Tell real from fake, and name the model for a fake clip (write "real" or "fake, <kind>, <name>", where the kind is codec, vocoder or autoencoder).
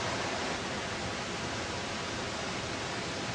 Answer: real